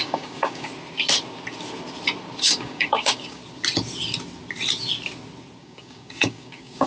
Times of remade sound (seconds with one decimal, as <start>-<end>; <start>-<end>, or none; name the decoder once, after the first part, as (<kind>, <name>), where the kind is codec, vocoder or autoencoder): 0.0-0.7 (codec, DAC); 2.4-3.4; 5.6-6.9